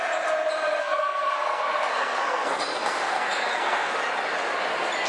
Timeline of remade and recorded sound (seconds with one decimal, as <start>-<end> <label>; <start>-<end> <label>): 0.0-0.8 recorded; 0.8-3.9 remade; 3.9-5.1 recorded